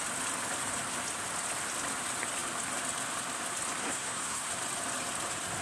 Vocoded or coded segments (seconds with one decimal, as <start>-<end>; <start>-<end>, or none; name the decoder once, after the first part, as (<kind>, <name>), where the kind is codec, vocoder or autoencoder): 3.8-4.5 (codec, SNAC)